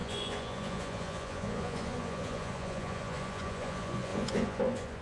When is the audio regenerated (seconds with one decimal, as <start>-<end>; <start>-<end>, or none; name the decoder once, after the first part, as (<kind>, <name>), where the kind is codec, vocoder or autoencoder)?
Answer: 0.0-5.0 (vocoder, Vocos)